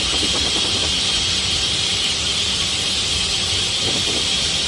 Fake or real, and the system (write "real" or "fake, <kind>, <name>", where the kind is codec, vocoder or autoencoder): fake, vocoder, BigVGAN v2